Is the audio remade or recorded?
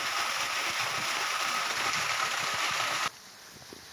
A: recorded